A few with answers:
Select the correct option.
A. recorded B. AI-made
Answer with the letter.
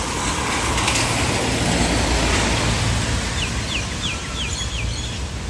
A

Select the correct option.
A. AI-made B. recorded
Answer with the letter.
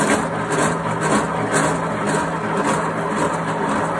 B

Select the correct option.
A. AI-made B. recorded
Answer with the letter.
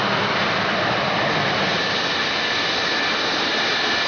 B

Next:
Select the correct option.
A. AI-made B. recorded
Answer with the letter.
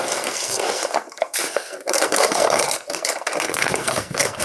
A